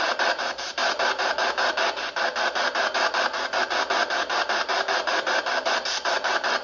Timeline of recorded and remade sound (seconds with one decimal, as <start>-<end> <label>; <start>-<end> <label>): 0.0-0.8 remade; 0.8-3.6 recorded; 3.6-4.0 remade; 4.0-5.0 recorded; 5.0-6.6 remade